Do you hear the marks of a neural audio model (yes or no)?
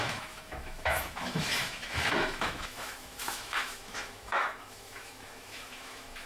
yes